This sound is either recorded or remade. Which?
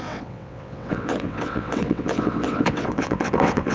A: remade